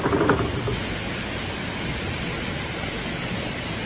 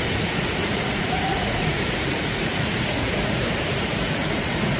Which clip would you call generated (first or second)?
second